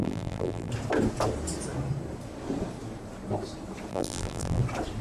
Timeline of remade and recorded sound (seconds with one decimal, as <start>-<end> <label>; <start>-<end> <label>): 0.0-0.7 remade; 0.7-3.9 recorded; 3.9-4.6 remade; 4.6-5.0 recorded